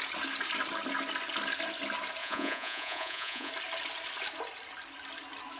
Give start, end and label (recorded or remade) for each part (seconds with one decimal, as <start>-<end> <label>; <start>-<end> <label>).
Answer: 0.0-2.2 recorded; 2.2-3.5 remade; 3.5-5.6 recorded